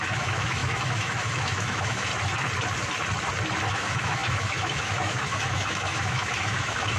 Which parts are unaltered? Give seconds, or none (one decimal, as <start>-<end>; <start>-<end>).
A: 2.1-3.7

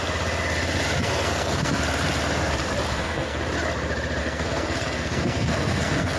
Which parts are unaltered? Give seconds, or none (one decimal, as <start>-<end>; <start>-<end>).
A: 0.0-1.0; 1.8-2.9; 3.4-4.2